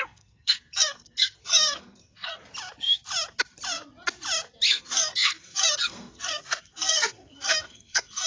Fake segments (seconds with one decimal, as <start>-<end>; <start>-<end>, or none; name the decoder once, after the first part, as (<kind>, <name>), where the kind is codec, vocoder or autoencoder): 0.0-2.4 (codec, SNAC); 4.7-8.3